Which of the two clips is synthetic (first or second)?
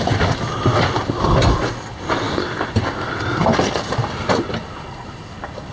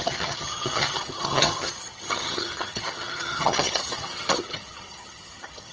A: second